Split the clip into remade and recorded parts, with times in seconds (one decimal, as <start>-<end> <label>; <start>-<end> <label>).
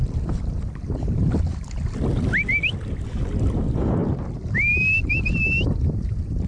0.0-6.5 recorded